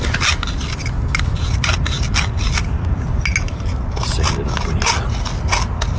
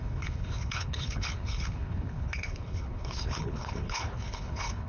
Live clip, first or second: first